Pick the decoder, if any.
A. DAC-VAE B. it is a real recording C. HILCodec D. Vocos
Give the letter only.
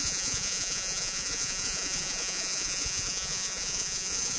D